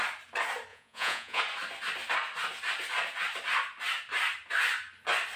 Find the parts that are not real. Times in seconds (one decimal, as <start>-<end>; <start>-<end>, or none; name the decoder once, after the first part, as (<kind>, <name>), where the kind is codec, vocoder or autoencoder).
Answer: 0.7-1.4 (vocoder, Vocos)